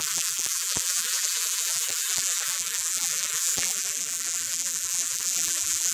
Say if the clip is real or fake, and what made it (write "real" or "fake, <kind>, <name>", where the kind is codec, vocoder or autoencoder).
fake, vocoder, BigVGAN v2